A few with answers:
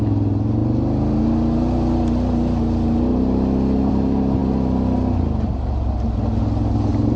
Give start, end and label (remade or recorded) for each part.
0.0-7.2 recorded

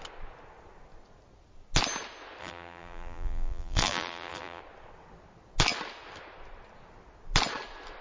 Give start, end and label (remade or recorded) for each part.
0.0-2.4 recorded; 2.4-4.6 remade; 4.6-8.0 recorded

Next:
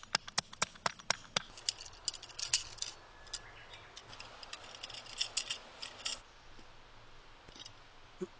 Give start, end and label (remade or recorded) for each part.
0.0-8.4 recorded